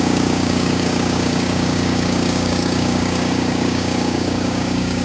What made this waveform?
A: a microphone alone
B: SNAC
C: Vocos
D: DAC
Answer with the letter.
D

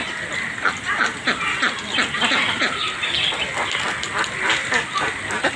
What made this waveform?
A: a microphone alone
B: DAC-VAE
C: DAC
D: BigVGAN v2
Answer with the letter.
A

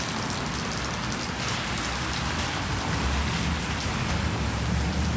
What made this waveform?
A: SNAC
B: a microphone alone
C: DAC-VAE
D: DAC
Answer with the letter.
B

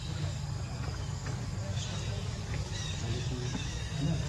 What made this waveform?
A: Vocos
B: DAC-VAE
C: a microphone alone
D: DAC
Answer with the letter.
D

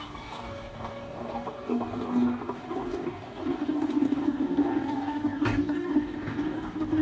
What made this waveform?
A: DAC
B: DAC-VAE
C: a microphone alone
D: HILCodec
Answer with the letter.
A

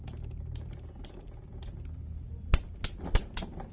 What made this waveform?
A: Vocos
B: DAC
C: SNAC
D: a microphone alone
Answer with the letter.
D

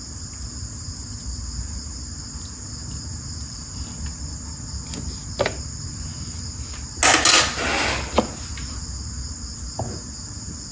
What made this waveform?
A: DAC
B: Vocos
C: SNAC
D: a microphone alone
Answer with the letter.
D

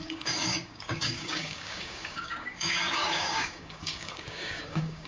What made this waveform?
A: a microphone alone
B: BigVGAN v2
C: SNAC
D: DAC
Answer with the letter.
D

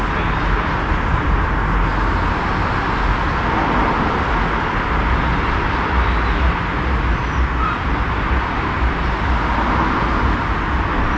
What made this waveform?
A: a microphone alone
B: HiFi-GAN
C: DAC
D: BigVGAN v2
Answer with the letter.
A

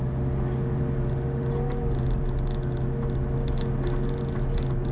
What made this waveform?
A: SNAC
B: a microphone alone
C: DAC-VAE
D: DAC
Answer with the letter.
B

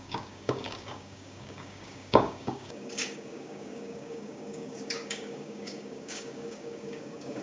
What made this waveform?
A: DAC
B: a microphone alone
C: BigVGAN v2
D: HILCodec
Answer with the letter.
A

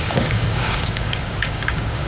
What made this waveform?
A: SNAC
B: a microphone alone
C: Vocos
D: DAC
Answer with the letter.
D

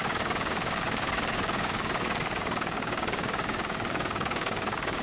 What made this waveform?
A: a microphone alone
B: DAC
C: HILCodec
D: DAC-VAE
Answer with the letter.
B